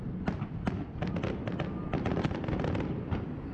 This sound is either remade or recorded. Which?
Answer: recorded